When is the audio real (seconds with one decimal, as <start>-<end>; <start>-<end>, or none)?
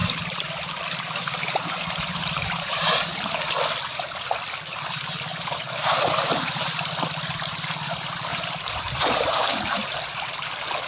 3.3-5.3; 9.8-10.9